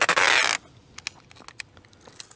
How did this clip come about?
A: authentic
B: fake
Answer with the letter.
A